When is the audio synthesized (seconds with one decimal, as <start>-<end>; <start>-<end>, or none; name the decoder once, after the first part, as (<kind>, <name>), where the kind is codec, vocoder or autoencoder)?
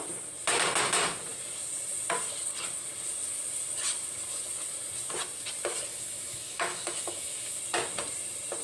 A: 5.9-7.6 (autoencoder, DAC-VAE)